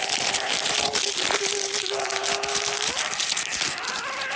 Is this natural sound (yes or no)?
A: yes